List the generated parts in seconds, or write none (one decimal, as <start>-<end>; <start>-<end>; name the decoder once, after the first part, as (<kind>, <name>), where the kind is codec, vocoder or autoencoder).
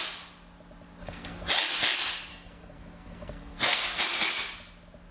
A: 1.0-1.5 (codec, SNAC); 2.3-4.0